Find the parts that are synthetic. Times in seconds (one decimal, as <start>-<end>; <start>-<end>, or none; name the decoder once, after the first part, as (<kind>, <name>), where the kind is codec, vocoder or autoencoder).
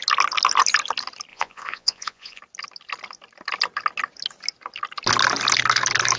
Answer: 1.3-2.4 (vocoder, Vocos)